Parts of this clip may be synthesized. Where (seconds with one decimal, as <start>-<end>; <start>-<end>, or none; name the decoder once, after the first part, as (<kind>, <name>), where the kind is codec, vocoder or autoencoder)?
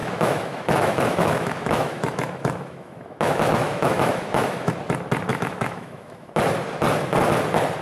0.0-4.7 (autoencoder, DAC-VAE); 5.3-6.3